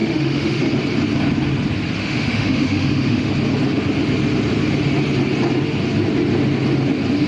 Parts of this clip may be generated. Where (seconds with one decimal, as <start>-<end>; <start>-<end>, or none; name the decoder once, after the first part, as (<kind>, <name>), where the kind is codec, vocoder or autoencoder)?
0.0-0.6 (autoencoder, DAC-VAE); 2.0-3.3